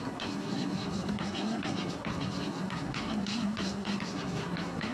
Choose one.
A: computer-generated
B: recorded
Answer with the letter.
A